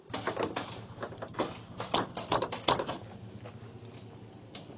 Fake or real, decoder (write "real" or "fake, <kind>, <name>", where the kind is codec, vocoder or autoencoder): real